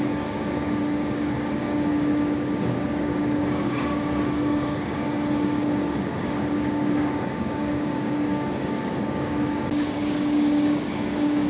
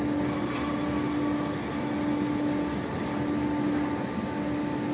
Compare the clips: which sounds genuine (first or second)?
second